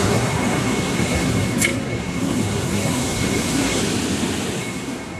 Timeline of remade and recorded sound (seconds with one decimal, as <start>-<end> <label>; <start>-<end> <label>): 0.0-3.8 remade; 3.8-4.6 recorded; 4.6-5.2 remade

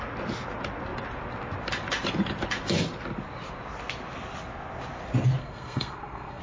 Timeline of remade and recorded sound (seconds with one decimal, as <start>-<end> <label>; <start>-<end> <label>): 0.0-5.4 recorded; 5.4-6.4 remade

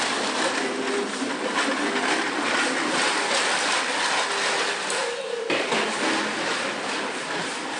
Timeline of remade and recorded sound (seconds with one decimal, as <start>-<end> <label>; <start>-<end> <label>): 0.0-7.8 recorded

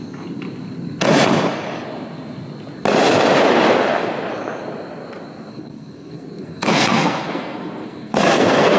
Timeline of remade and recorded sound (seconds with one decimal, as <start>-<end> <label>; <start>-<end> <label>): 0.0-5.5 recorded; 5.5-8.8 remade

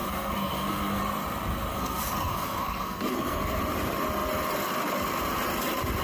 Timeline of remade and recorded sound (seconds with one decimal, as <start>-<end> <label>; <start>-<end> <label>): 0.0-1.0 remade; 1.0-1.7 recorded; 1.7-3.6 remade; 3.6-6.0 recorded

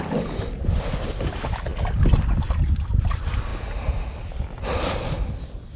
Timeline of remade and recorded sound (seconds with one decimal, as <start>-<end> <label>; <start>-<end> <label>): 0.0-5.8 recorded

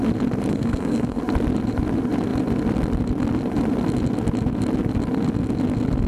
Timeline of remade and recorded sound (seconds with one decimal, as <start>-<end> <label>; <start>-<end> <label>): 0.0-0.5 recorded; 0.5-1.2 remade; 1.2-6.1 recorded